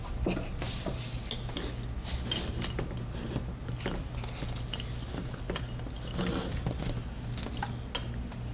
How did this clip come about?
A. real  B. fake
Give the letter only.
A